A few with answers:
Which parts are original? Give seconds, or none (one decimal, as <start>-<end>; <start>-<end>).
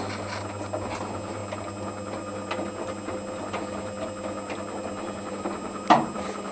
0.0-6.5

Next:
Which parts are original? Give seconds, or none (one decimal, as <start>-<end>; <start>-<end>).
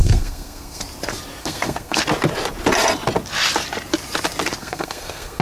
0.8-1.4; 2.0-4.6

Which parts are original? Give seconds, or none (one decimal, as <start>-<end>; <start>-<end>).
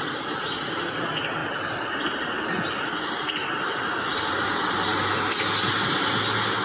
0.0-6.6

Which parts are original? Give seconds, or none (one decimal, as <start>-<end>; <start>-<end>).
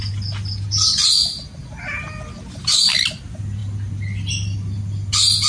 0.0-5.5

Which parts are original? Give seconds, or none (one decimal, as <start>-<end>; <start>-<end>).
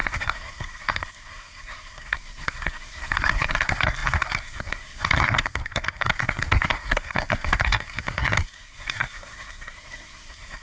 none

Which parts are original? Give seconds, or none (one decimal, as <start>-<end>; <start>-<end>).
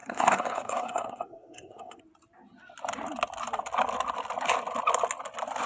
2.0-5.7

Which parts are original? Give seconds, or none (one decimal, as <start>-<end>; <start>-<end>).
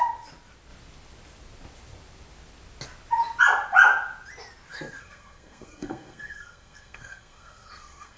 0.0-4.7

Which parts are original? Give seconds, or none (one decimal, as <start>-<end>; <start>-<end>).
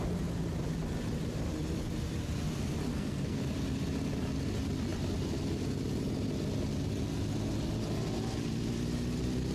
0.0-2.9; 3.4-9.5